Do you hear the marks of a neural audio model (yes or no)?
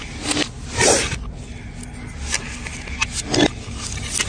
no